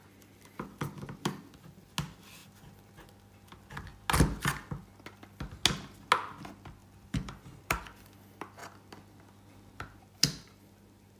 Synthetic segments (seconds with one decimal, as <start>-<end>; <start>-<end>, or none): 2.4-2.9; 6.8-7.8